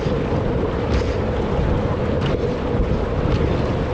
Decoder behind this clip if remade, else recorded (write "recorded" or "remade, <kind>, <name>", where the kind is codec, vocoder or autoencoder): recorded